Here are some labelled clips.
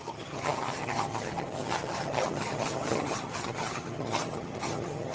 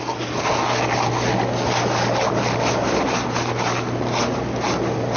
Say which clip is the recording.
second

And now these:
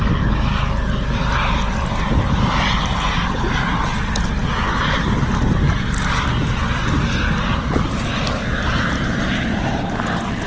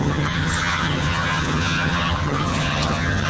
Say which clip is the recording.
first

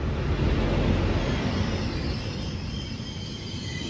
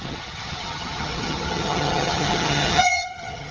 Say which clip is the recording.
first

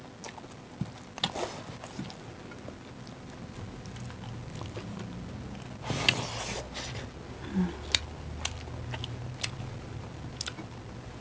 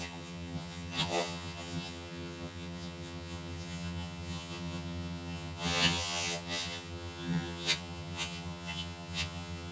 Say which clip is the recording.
first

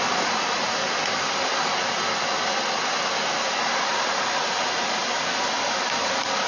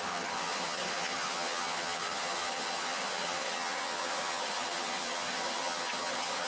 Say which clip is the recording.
first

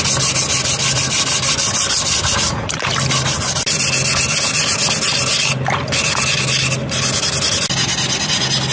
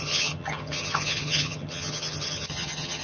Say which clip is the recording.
first